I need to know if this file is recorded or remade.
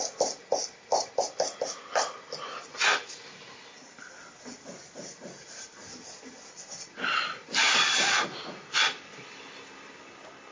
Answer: recorded